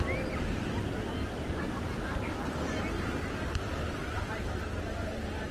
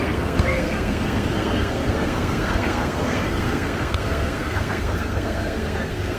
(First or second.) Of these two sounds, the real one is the first